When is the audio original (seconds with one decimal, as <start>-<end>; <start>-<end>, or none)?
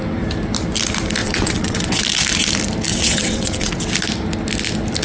0.0-1.2; 2.0-2.9; 3.8-5.0